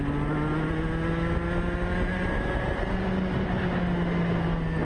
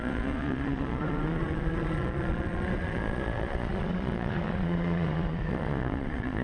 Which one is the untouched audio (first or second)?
first